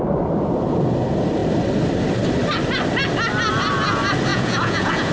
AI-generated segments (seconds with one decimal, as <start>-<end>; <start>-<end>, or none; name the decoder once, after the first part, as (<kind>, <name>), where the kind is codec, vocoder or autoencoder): 4.3-5.1 (vocoder, Vocos)